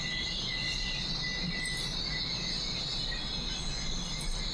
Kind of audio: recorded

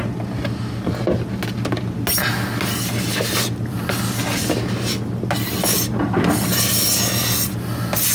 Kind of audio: recorded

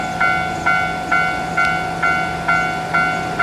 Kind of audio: recorded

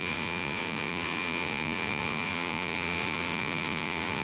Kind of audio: remade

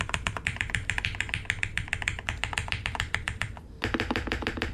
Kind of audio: recorded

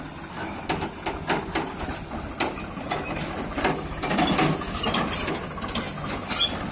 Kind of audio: recorded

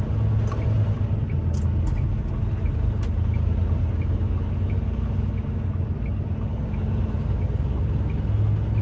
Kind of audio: recorded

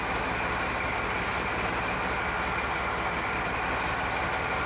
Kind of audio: recorded